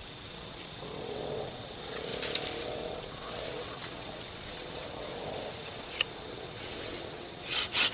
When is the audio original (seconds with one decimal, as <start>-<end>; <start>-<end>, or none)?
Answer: 2.1-2.6; 5.1-6.2